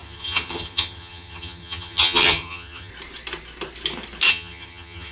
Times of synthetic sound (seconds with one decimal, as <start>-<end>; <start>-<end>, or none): 0.0-2.9; 4.3-5.1